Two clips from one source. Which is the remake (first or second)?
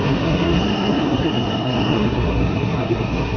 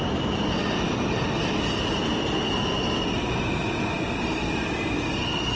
first